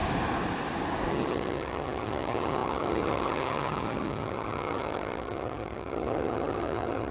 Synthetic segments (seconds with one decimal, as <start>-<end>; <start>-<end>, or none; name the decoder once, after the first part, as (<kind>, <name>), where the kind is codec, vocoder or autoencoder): 1.1-7.1 (vocoder, HiFi-GAN)